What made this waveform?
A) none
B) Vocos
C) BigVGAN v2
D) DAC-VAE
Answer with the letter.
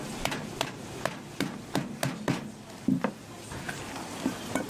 A